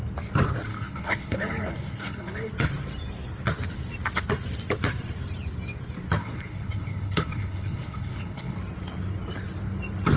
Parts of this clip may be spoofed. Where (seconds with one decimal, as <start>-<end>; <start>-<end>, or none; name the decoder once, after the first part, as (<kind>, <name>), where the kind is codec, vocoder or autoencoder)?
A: 0.7-2.5 (codec, HILCodec); 6.2-8.6